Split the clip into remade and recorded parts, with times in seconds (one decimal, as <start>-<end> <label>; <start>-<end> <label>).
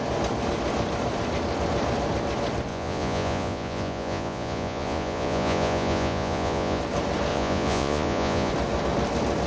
0.0-2.7 recorded; 2.7-6.8 remade; 6.8-7.3 recorded; 7.3-8.5 remade; 8.5-9.5 recorded